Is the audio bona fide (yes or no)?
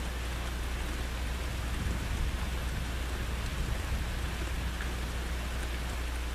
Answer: yes